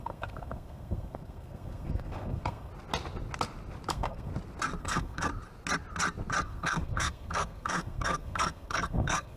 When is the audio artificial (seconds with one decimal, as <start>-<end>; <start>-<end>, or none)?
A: 0.0-2.7; 3.9-4.3; 4.8-5.3; 6.4-9.4